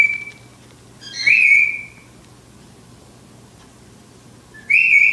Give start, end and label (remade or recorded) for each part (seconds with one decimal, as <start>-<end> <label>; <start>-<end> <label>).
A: 0.0-5.1 recorded